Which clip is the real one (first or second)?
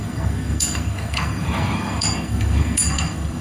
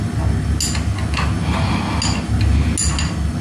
second